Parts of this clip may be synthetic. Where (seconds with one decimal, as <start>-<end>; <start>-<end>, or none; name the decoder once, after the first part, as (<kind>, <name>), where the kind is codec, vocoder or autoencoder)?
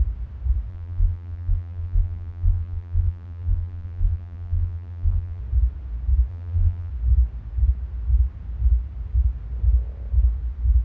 0.7-5.4 (vocoder, BigVGAN v2); 6.3-6.9